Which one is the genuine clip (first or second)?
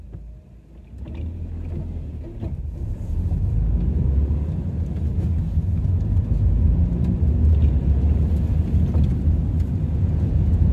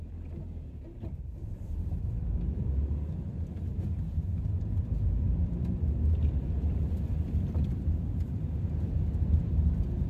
first